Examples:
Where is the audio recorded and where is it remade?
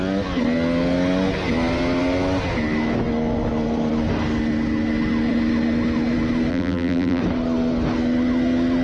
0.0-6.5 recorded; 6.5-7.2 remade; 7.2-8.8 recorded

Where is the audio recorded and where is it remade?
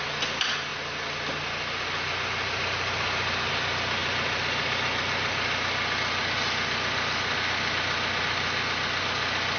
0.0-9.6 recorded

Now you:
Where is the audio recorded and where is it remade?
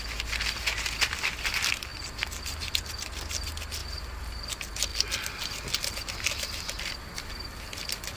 0.0-3.8 recorded; 3.8-4.5 remade; 4.5-8.2 recorded